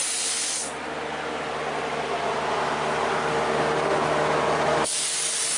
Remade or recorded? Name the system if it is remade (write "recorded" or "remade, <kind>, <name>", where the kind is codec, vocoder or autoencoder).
recorded